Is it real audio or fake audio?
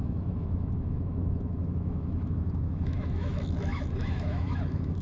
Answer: fake